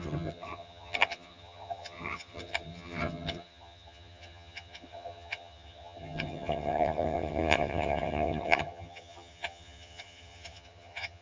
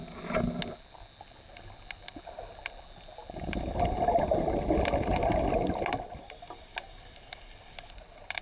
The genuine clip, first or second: second